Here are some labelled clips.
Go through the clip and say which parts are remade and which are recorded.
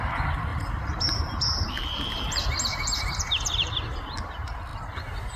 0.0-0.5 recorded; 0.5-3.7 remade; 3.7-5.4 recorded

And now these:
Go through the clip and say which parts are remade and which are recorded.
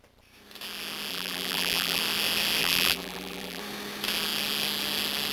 0.0-1.1 recorded; 1.1-2.0 remade; 2.0-2.6 recorded; 2.6-3.6 remade; 3.6-5.3 recorded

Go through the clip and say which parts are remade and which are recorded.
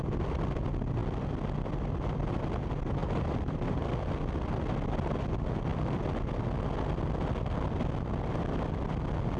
0.0-3.0 recorded; 3.0-3.9 remade; 3.9-9.4 recorded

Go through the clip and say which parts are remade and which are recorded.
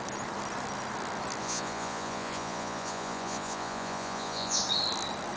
0.0-1.4 recorded; 1.4-4.6 remade; 4.6-5.4 recorded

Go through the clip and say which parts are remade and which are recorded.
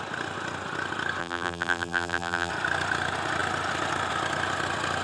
0.0-1.2 recorded; 1.2-2.5 remade; 2.5-5.0 recorded